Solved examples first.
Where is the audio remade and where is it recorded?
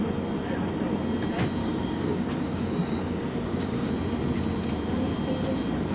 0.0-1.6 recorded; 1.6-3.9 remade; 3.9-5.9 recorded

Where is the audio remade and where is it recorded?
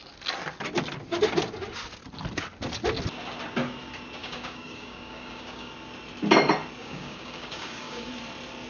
0.0-4.2 recorded; 4.2-5.7 remade; 5.7-6.8 recorded; 6.8-8.1 remade; 8.1-8.7 recorded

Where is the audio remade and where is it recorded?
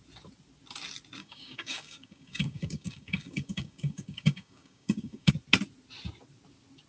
0.0-1.2 recorded; 1.2-5.3 remade; 5.3-6.9 recorded